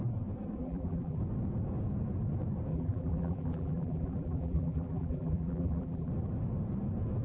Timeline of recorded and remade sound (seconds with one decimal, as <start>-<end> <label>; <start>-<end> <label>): 0.0-0.6 recorded; 0.6-1.2 remade; 1.2-2.7 recorded; 2.7-6.1 remade; 6.1-7.2 recorded